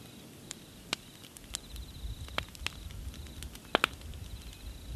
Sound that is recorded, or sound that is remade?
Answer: recorded